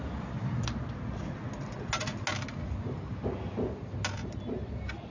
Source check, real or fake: real